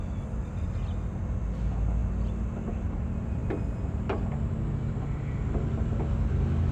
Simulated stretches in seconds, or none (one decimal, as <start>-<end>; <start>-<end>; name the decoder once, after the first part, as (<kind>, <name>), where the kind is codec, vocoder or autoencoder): none